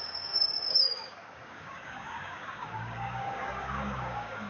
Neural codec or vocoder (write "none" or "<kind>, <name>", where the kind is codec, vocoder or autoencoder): codec, DAC